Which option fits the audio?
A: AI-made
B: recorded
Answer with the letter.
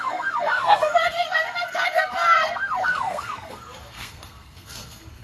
A